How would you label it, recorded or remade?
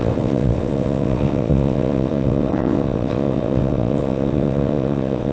remade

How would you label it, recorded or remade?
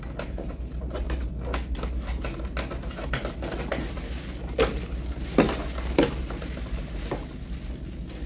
recorded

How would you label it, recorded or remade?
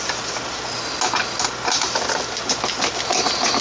recorded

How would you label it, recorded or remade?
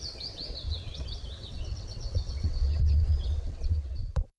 remade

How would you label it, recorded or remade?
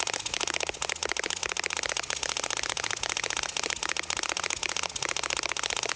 recorded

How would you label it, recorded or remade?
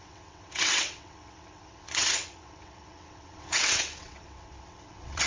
remade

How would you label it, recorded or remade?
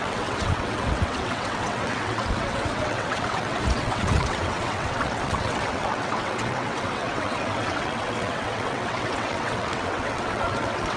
remade